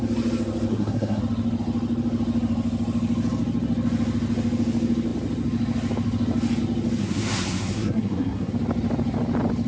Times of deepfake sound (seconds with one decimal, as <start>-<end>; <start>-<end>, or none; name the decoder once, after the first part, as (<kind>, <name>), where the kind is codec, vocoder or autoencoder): 0.7-1.2 (codec, SNAC); 7.0-8.5